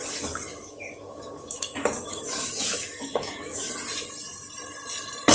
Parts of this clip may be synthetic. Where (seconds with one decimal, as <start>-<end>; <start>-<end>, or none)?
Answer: 0.5-3.7